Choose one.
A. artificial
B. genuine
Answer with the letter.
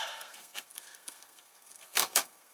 A